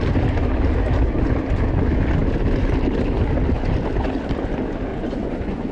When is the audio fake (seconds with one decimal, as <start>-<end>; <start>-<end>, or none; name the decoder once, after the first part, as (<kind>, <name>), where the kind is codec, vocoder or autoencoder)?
4.9-5.7 (vocoder, Vocos)